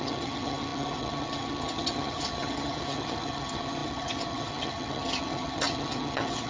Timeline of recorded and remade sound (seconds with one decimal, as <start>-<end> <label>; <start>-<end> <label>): 0.0-6.5 remade